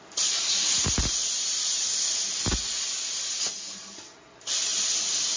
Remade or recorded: recorded